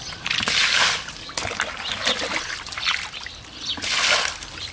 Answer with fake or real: real